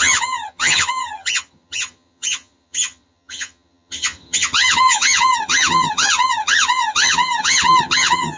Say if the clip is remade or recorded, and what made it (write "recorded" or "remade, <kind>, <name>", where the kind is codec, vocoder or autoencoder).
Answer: remade, vocoder, HiFi-GAN